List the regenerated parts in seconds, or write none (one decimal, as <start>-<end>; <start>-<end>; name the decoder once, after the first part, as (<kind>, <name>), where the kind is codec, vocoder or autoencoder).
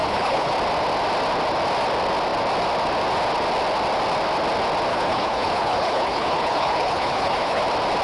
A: 0.0-0.5 (codec, HILCodec); 4.9-7.6